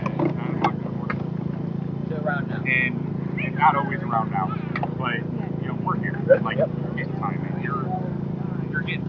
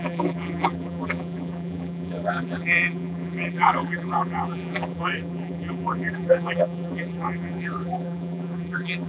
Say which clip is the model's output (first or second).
second